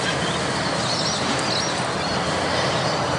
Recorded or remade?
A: recorded